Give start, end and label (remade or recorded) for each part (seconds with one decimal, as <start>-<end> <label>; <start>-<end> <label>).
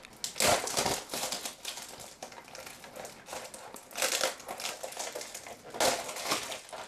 0.0-6.9 recorded